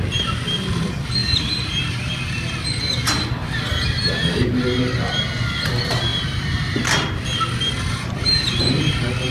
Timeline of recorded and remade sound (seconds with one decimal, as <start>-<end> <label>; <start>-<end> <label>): 0.0-1.2 recorded; 1.2-2.1 remade; 2.1-3.4 recorded; 3.4-4.1 remade; 4.1-6.1 recorded; 6.1-6.8 remade; 6.8-7.9 recorded; 7.9-8.5 remade; 8.5-9.3 recorded